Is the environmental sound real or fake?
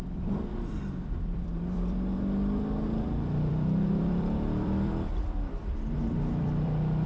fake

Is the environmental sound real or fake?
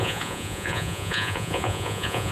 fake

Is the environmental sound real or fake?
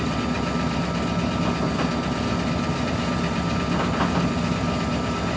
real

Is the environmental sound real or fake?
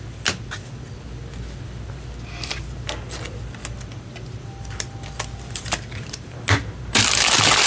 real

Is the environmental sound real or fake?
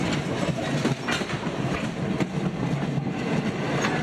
real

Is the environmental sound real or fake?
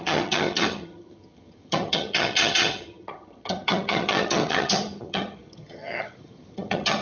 fake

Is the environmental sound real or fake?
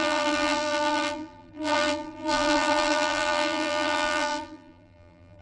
fake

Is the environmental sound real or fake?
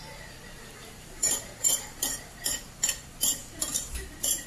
fake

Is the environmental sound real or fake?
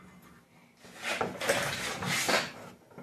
real